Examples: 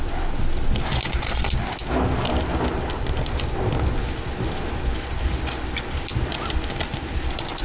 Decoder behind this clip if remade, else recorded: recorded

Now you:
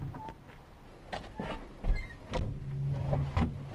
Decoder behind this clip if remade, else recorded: recorded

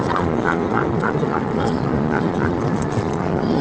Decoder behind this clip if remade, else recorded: remade, vocoder, Vocos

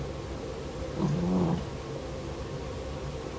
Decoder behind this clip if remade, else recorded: recorded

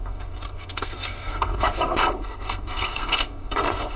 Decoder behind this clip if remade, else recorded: remade, codec, SNAC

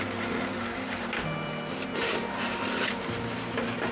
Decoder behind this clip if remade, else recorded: recorded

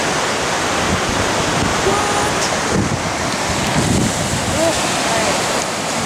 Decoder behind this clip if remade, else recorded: recorded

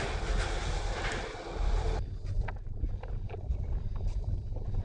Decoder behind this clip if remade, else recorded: recorded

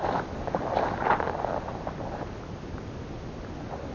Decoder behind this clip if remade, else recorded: recorded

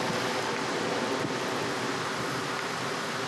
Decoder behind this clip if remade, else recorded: recorded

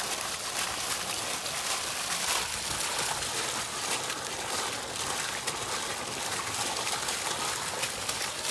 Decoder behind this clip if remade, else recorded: recorded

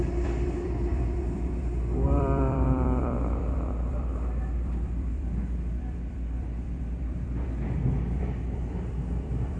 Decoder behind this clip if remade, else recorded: remade, vocoder, BigVGAN v2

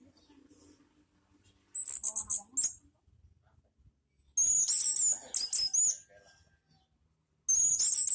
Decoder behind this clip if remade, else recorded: recorded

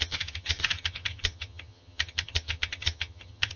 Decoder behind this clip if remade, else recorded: remade, vocoder, HiFi-GAN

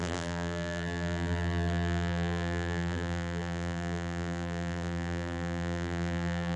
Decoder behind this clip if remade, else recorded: remade, vocoder, BigVGAN v2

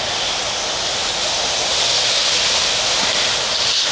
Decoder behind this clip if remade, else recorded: recorded